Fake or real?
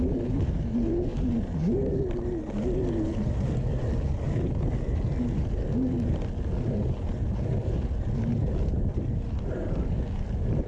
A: real